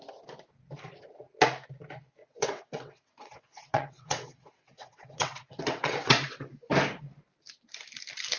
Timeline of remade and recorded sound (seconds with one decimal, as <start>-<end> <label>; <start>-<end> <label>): 0.0-2.2 recorded; 2.2-6.5 remade; 6.5-8.4 recorded